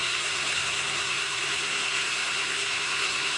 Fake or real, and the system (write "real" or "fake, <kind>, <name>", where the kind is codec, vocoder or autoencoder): fake, codec, SNAC